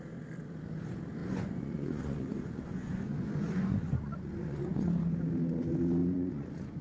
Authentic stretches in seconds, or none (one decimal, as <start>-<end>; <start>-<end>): 0.0-1.2; 4.9-6.0